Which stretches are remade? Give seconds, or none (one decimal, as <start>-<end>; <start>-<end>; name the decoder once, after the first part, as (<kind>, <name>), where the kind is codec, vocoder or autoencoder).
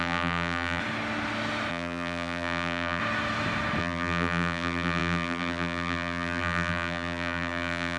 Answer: 0.0-0.8 (vocoder, BigVGAN v2); 1.7-3.0; 3.8-8.0